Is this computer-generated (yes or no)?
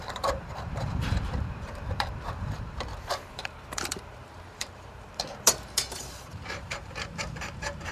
yes